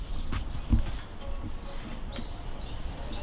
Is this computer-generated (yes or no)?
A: no